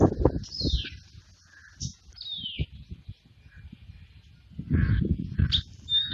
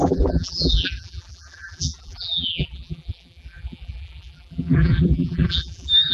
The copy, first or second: second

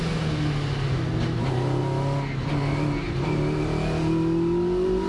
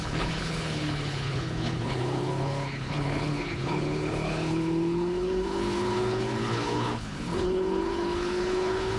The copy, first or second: second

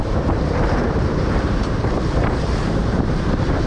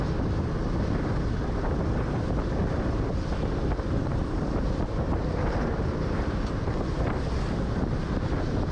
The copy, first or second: first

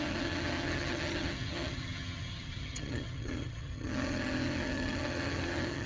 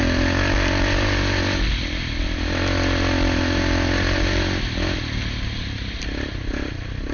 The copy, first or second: first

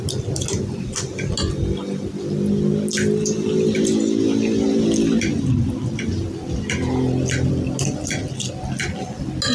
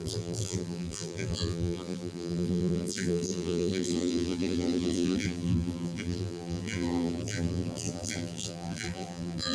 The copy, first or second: second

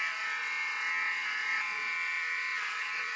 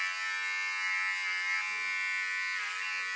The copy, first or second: first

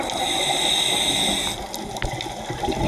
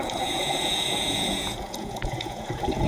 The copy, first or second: second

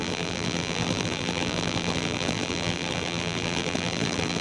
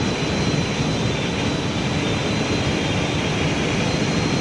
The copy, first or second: first